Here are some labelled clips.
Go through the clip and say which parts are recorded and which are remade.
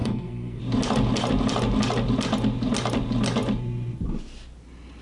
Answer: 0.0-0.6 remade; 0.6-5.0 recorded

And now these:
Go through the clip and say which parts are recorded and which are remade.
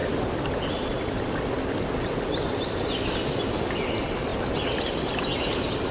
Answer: 0.0-5.9 recorded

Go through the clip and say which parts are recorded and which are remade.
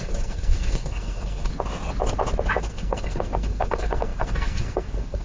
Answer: 0.0-1.5 remade; 1.5-2.6 recorded; 2.6-5.2 remade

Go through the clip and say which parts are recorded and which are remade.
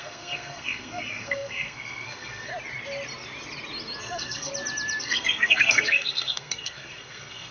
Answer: 0.0-2.5 remade; 2.5-4.0 recorded; 4.0-4.5 remade; 4.5-5.0 recorded; 5.0-7.5 remade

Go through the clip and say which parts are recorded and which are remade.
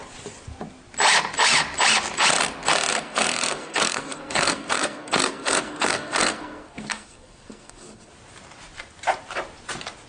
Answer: 0.0-2.9 recorded; 2.9-8.1 remade; 8.1-10.1 recorded